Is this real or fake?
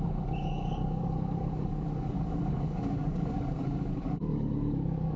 fake